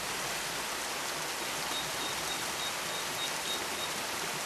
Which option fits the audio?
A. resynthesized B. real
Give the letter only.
B